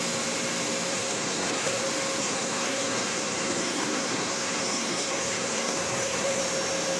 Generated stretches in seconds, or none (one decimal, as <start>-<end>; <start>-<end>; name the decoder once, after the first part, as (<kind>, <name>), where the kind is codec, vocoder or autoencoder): 0.9-1.8 (codec, SNAC); 2.2-6.4